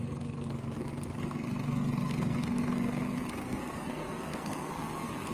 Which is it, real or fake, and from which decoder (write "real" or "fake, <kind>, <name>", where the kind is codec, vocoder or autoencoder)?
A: fake, codec, SNAC